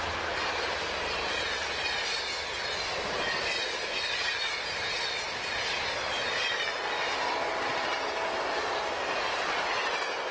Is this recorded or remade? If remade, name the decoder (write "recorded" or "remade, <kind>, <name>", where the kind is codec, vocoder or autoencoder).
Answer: recorded